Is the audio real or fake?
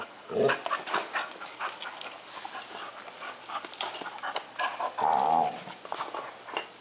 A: real